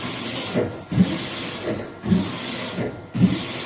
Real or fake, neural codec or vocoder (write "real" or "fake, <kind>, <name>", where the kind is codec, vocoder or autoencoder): real